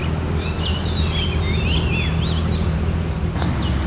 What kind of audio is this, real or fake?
real